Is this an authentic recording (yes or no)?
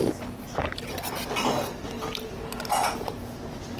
yes